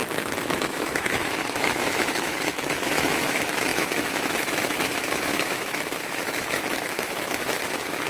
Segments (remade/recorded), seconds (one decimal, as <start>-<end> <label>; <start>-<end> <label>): 0.0-8.1 remade